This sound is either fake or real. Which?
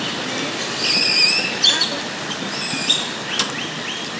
real